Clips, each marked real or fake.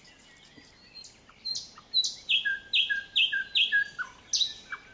real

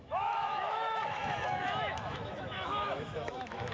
fake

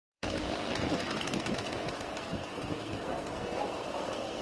fake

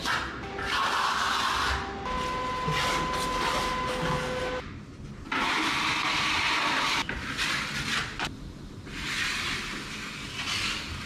real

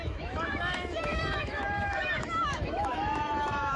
fake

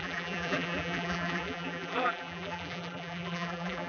fake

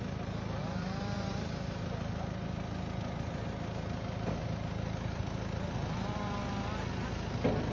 real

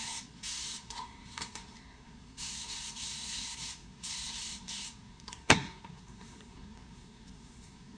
fake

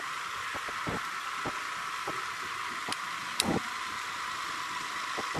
real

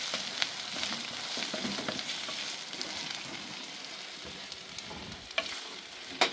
real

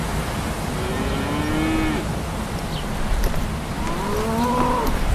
real